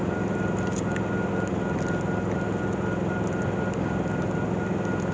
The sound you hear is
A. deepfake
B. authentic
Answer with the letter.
B